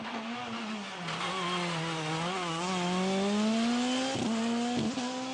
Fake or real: real